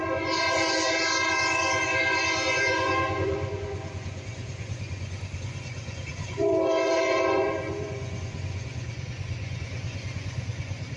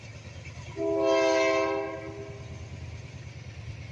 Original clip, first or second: second